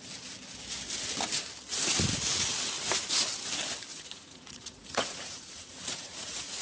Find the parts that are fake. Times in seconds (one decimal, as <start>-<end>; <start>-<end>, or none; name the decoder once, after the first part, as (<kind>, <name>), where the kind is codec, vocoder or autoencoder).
3.9-6.6 (vocoder, Vocos)